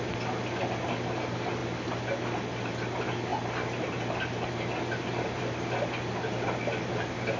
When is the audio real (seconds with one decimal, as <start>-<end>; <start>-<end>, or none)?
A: 0.0-7.4